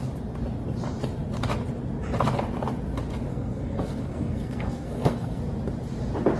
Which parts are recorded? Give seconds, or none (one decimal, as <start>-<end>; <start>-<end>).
0.0-3.3; 5.4-6.4